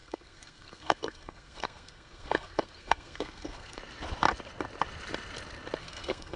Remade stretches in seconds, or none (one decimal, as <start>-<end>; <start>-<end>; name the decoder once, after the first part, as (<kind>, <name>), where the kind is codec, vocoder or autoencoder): 0.0-3.8 (codec, SNAC); 5.8-6.4